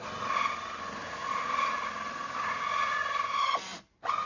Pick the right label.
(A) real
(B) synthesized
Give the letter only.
A